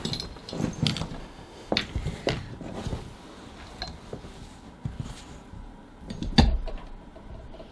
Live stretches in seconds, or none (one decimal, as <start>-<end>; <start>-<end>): 0.0-1.2; 1.7-7.7